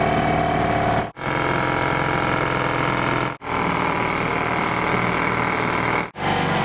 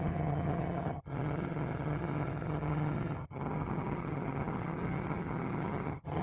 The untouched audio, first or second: first